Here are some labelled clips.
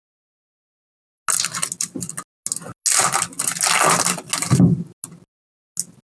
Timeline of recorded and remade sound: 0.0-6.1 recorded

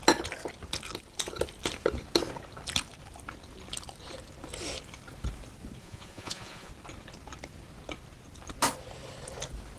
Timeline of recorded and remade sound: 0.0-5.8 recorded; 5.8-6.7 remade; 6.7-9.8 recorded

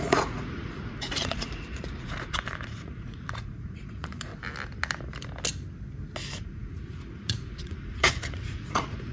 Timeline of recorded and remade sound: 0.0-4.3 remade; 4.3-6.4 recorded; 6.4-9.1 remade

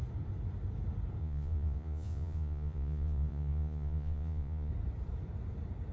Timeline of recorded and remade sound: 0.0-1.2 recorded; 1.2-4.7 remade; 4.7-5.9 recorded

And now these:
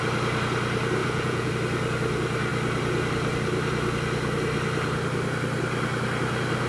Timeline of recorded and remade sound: 0.0-1.0 recorded; 1.0-1.5 remade; 1.5-6.7 recorded

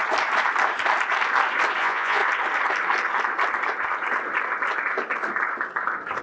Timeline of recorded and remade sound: 0.0-1.8 recorded; 1.8-2.2 remade; 2.2-6.2 recorded

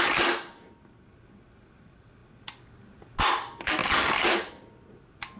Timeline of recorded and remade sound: 0.0-5.4 recorded

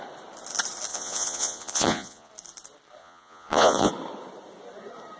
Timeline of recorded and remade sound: 0.0-0.9 recorded; 0.9-2.3 remade; 2.3-3.0 recorded; 3.0-3.9 remade; 3.9-5.2 recorded